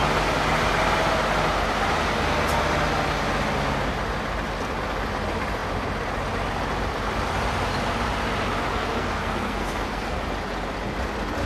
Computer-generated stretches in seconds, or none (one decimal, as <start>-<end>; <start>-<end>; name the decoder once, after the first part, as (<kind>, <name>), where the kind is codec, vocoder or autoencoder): 8.7-10.2 (codec, SNAC)